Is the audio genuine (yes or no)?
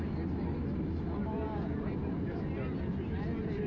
yes